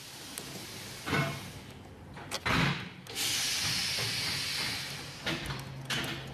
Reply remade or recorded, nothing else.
recorded